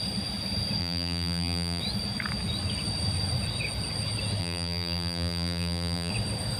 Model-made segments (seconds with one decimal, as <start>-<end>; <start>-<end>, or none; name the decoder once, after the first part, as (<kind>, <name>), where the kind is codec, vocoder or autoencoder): 0.8-1.8 (vocoder, BigVGAN v2); 4.4-6.1